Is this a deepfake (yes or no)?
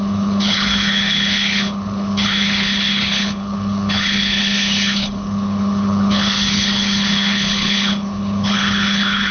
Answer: yes